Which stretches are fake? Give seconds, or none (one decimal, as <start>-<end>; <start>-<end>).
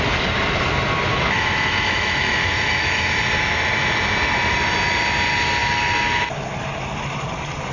1.1-3.2